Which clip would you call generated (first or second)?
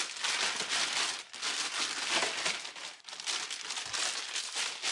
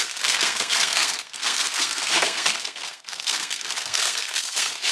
second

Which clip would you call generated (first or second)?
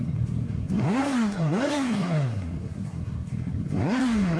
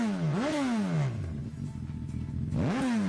first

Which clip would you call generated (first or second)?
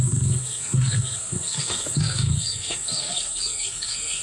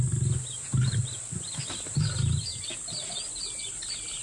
first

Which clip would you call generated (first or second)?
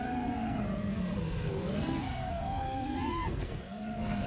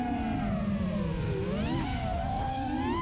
first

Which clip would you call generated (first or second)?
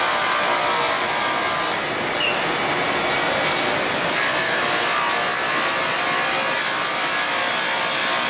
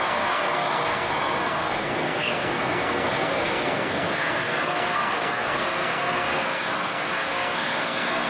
second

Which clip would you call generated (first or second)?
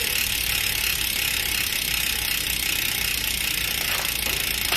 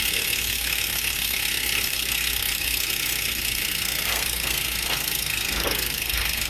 second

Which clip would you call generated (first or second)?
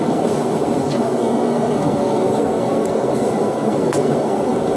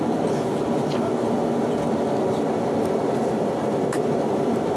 first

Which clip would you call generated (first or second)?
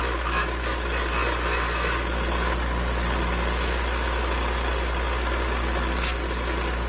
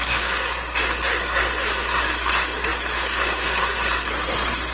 second